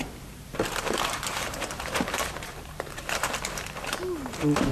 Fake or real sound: fake